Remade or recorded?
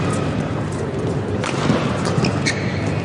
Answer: recorded